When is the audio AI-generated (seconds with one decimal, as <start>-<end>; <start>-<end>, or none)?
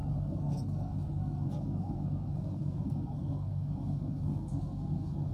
0.0-5.3